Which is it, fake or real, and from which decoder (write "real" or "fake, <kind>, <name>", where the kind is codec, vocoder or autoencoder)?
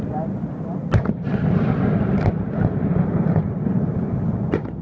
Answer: real